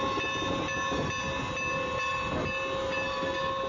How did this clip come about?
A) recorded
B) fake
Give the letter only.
A